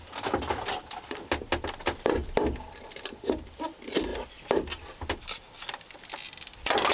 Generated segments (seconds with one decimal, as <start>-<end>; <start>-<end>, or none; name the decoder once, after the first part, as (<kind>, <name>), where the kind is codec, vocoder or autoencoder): none